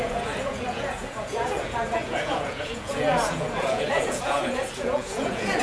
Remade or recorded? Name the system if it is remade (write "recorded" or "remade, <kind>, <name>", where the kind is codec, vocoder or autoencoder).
remade, vocoder, Vocos